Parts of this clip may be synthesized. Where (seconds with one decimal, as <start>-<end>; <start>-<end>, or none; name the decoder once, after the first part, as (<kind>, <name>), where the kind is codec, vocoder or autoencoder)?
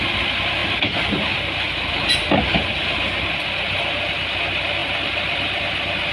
none